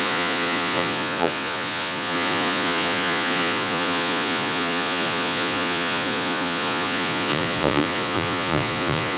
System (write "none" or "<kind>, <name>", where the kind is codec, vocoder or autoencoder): vocoder, Vocos